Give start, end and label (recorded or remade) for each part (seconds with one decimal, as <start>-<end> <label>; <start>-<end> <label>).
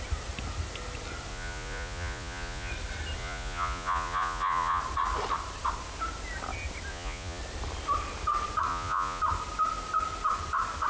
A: 0.0-1.3 recorded; 1.3-2.7 remade; 2.7-3.2 recorded; 3.2-4.8 remade; 4.8-6.9 recorded; 6.9-7.4 remade; 7.4-8.7 recorded; 8.7-9.2 remade; 9.2-10.9 recorded